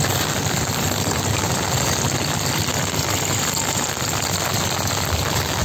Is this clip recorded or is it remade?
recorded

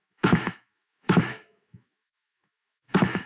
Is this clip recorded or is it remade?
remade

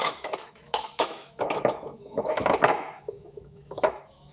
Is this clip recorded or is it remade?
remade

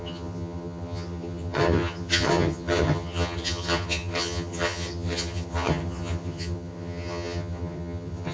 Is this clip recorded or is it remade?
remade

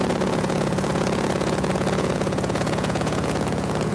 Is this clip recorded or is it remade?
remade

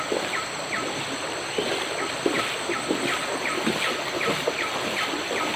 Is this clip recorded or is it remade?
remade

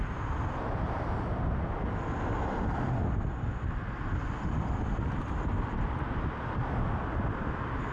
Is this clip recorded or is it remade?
recorded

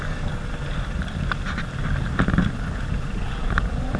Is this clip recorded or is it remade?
recorded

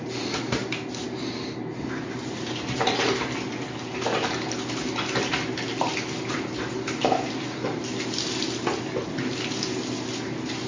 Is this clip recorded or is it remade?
recorded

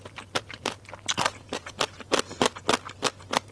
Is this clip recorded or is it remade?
recorded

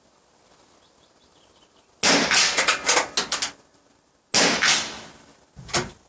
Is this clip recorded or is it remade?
recorded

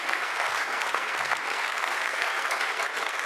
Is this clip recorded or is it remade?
remade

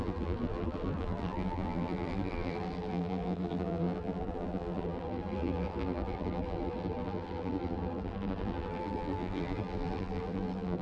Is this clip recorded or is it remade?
remade